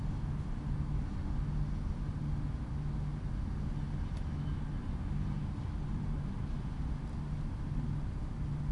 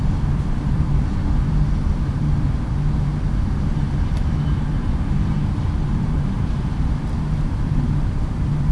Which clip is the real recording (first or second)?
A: first